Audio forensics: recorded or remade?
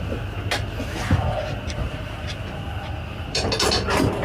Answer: recorded